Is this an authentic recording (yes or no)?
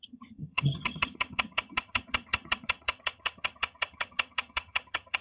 no